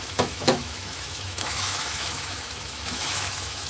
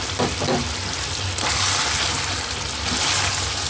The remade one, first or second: first